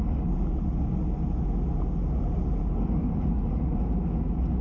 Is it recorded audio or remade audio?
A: recorded